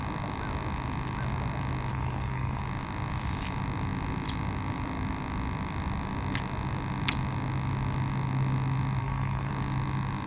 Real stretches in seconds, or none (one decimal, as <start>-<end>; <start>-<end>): 0.0-1.9; 2.6-9.0; 9.5-10.3